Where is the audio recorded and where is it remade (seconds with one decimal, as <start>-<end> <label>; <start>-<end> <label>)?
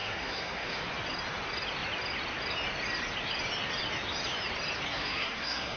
0.0-0.8 remade; 0.8-4.9 recorded; 4.9-5.8 remade